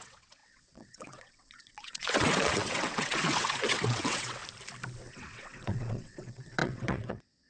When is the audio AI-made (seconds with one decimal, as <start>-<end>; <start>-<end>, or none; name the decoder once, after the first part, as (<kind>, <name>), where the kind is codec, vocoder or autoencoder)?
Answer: 0.0-4.4 (vocoder, WaveNeXt); 5.1-7.5